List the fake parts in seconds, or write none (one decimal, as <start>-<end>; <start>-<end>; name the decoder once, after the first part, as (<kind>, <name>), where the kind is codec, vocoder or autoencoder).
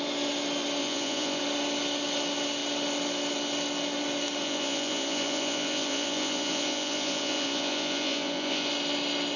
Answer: 0.8-1.4 (vocoder, Vocos); 4.4-8.7